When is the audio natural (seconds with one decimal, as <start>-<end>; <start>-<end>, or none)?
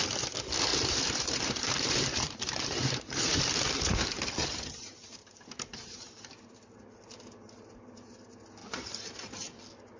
0.0-0.7; 3.4-4.4; 6.3-10.0